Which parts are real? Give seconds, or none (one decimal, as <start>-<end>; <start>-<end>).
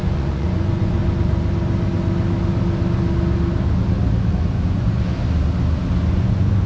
1.0-4.3; 5.1-6.1